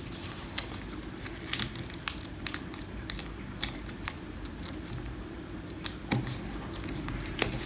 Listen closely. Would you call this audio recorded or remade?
recorded